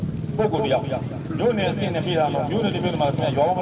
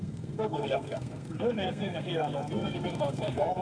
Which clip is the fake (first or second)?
second